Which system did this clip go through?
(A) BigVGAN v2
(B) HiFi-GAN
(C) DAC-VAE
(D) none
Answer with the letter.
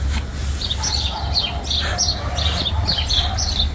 D